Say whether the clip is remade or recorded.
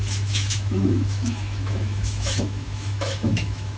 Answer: remade